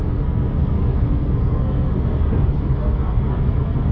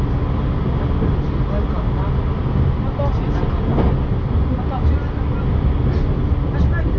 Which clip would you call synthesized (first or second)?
first